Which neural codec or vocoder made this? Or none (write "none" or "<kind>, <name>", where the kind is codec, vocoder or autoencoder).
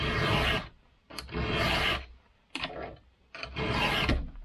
none